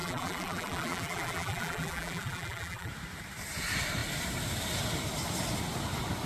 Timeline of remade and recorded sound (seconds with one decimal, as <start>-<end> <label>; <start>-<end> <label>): 0.0-2.9 remade; 2.9-6.3 recorded